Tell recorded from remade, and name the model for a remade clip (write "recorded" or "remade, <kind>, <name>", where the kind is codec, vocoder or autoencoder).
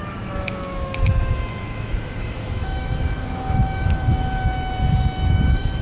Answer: remade, autoencoder, DAC-VAE